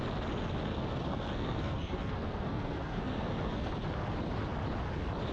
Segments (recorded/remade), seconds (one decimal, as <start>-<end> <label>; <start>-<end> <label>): 0.0-0.7 recorded; 0.7-3.7 remade; 3.7-5.3 recorded